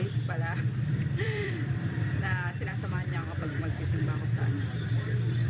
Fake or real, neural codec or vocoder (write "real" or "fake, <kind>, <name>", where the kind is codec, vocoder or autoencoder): fake, vocoder, BigVGAN v2